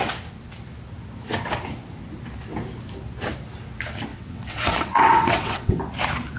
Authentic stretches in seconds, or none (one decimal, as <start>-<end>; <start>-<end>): 0.0-4.1; 5.8-6.4